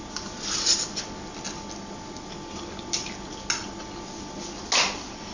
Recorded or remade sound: recorded